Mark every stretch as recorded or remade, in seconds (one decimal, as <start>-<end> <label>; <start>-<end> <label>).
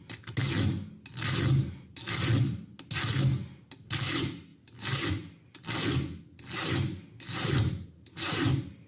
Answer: 0.0-8.9 recorded